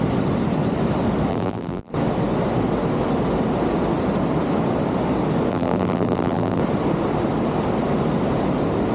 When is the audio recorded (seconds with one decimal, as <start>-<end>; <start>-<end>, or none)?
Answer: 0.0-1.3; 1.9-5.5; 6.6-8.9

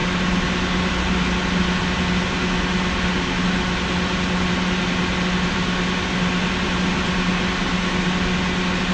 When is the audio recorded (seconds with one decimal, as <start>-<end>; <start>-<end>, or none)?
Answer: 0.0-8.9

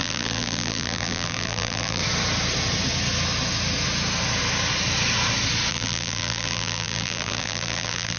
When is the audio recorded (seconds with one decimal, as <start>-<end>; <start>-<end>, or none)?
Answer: 2.0-5.7

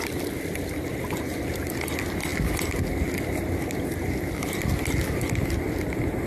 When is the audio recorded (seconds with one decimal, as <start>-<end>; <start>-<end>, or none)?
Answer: 0.0-6.3

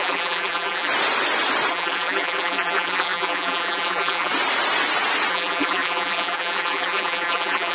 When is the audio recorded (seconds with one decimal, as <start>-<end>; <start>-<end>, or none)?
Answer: 0.9-1.7; 4.3-5.3

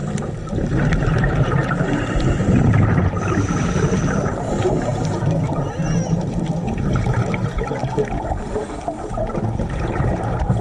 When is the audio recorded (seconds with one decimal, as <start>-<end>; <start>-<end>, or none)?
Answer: 0.0-1.0; 1.6-3.6; 7.8-9.6

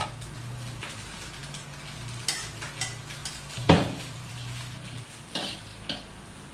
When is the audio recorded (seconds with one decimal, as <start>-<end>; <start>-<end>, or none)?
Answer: 0.0-3.2; 4.3-6.5